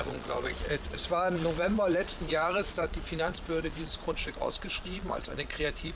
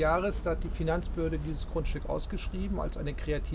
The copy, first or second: first